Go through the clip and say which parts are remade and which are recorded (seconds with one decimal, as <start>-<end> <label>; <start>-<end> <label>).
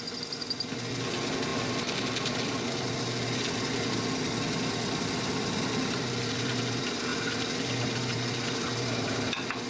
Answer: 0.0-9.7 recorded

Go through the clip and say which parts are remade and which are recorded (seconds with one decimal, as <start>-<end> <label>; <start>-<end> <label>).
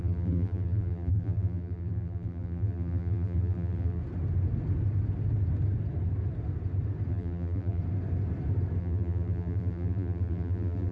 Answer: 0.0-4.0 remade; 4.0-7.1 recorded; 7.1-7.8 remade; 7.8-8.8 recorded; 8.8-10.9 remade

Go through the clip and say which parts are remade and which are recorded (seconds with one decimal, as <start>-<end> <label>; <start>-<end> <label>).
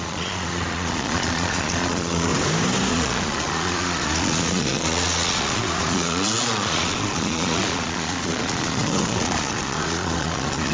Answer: 0.0-2.3 remade; 2.3-2.9 recorded; 2.9-10.7 remade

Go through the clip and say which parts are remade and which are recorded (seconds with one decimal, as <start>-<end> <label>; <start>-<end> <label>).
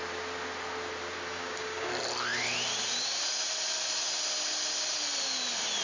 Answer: 0.0-1.3 recorded; 1.3-1.9 remade; 1.9-5.8 recorded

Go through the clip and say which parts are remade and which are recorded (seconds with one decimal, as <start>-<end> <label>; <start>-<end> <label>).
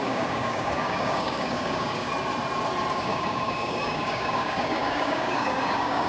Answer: 0.0-2.1 remade; 2.1-2.9 recorded; 2.9-6.1 remade